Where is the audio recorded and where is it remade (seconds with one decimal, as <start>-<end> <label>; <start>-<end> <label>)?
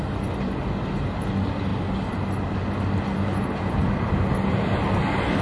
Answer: 0.0-5.4 recorded